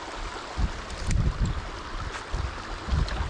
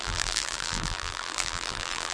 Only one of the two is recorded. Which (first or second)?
first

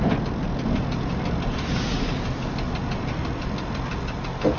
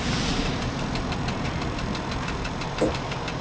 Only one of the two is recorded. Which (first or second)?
first